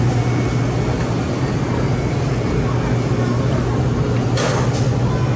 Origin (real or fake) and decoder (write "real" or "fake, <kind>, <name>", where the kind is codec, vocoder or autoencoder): real